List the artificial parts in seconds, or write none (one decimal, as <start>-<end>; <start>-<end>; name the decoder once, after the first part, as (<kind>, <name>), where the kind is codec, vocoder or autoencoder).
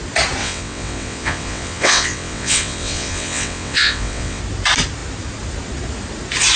0.4-4.4 (vocoder, WaveNeXt)